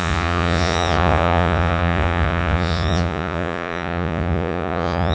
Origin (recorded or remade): remade